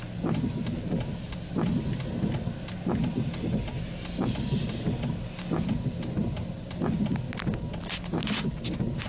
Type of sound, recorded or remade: recorded